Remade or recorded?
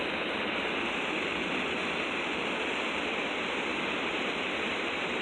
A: recorded